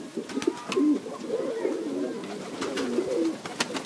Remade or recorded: recorded